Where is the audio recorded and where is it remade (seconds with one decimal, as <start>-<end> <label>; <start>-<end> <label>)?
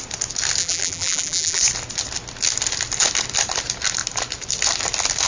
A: 0.0-0.6 recorded; 0.6-1.6 remade; 1.6-5.3 recorded